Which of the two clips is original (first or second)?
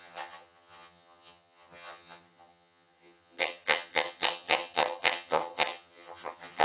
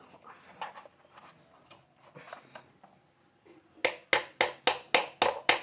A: second